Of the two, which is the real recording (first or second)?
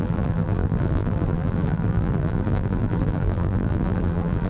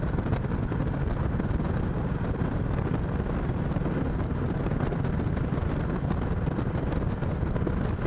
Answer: second